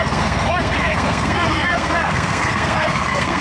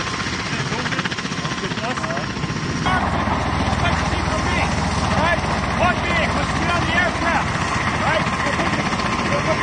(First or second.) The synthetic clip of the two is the first